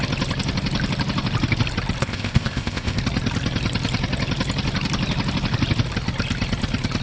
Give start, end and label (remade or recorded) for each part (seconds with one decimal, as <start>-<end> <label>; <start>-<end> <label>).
0.0-2.0 recorded; 2.0-3.0 remade; 3.0-7.0 recorded